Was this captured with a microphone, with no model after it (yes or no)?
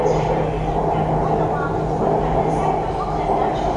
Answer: yes